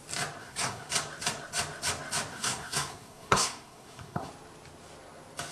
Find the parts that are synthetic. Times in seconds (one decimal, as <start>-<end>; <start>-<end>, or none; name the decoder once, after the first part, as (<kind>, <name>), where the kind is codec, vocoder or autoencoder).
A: 0.4-0.9 (codec, SNAC); 2.3-4.3